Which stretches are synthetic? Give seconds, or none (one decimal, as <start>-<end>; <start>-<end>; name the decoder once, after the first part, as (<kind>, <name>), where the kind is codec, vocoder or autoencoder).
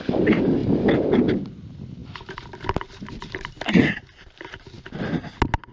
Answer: none